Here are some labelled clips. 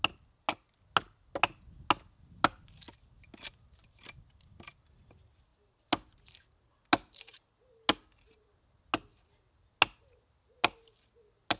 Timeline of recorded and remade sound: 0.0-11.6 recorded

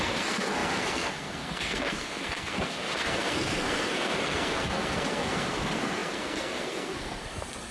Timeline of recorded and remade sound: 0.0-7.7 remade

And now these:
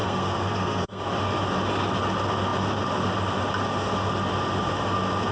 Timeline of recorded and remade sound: 0.0-1.0 remade; 1.0-5.3 recorded

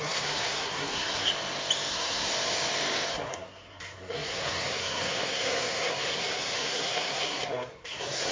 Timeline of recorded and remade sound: 0.0-1.3 remade; 1.3-1.9 recorded; 1.9-2.3 remade; 2.3-3.1 recorded; 3.1-8.3 remade

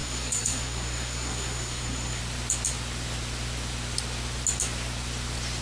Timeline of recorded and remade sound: 0.0-2.2 remade; 2.2-5.6 recorded